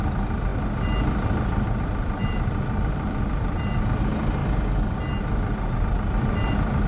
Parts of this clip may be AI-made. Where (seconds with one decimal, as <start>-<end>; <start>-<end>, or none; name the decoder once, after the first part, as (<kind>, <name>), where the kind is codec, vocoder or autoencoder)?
0.0-0.5 (vocoder, BigVGAN v2); 1.8-4.4; 5.8-6.9

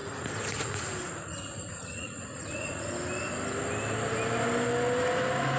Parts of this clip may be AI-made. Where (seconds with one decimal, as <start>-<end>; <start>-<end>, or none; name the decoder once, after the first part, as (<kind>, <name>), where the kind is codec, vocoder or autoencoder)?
0.0-2.9 (vocoder, Vocos)

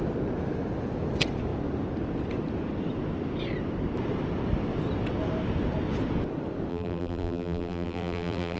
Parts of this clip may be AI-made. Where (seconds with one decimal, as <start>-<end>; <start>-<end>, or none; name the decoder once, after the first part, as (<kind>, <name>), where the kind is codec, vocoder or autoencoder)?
6.7-8.6 (vocoder, BigVGAN v2)